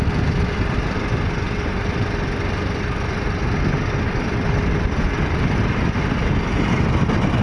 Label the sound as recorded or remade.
recorded